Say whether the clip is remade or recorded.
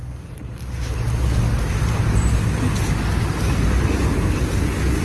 recorded